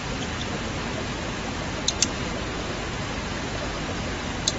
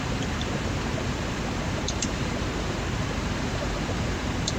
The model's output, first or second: second